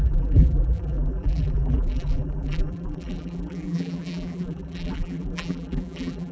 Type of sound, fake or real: fake